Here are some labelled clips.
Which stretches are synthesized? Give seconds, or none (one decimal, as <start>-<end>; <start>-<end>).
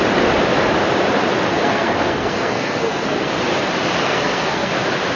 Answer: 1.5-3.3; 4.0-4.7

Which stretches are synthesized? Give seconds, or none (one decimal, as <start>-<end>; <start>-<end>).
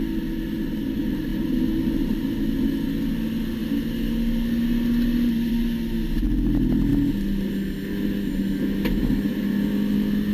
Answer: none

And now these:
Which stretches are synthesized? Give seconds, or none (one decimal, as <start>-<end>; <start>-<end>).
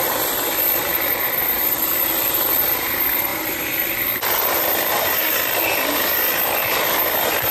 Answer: 0.0-7.5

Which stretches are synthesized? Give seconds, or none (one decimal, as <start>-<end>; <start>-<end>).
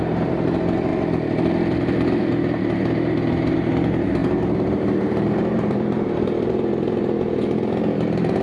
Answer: 0.0-0.9; 2.2-8.4